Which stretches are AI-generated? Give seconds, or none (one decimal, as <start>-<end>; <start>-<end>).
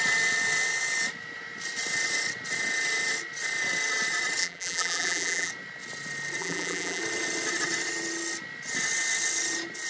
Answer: 4.4-5.5; 6.4-7.0